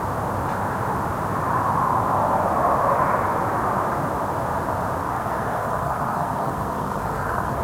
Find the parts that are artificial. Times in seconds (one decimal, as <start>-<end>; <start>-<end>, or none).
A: 5.0-7.6